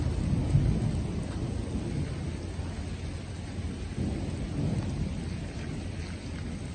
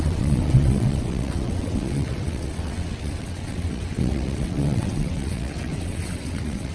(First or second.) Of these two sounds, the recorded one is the first